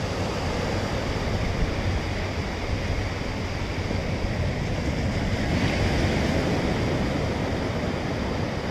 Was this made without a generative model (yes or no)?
yes